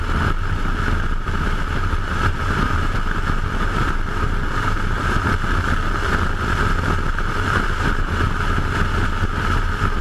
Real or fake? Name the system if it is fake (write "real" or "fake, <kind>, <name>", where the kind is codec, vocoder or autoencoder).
real